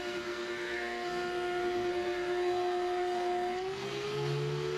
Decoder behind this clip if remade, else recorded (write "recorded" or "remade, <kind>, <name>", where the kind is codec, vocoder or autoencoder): remade, codec, SNAC